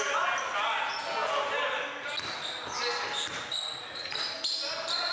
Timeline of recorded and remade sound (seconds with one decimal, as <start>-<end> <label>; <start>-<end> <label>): 0.0-5.1 recorded